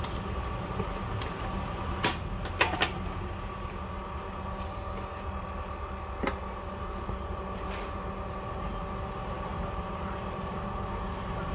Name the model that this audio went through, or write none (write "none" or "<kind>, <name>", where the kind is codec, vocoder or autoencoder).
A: none